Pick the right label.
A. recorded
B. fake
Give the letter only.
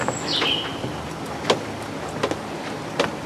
A